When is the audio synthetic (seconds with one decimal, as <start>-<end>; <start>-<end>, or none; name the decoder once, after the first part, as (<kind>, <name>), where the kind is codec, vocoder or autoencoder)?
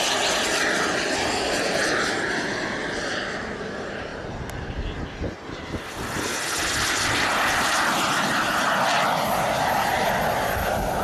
none